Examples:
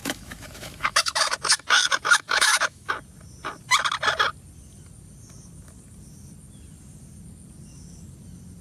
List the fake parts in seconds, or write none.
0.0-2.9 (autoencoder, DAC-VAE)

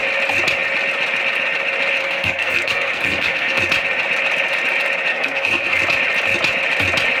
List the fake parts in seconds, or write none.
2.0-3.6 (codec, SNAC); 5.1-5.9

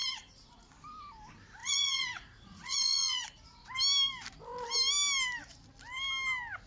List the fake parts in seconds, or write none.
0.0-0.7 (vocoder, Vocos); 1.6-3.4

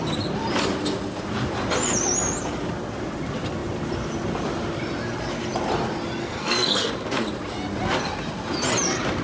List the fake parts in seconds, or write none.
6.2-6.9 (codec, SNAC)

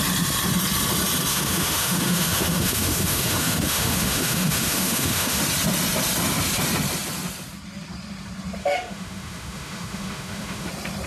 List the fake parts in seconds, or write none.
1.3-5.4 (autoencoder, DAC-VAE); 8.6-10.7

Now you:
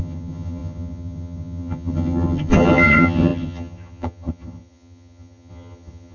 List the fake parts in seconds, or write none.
0.0-6.1 (vocoder, HiFi-GAN)